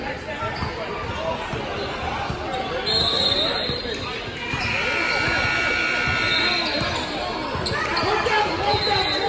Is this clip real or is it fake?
real